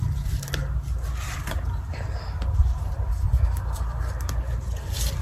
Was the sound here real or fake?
real